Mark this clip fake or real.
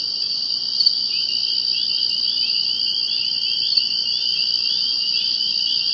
real